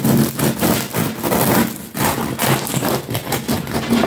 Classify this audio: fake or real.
real